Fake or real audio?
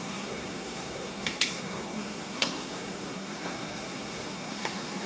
fake